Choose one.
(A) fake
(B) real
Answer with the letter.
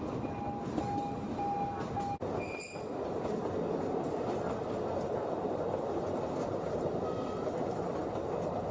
B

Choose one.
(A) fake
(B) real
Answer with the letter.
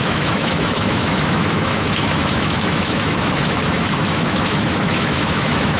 A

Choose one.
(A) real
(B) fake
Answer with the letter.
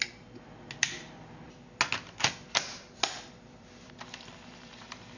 A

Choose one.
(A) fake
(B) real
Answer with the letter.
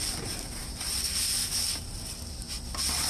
B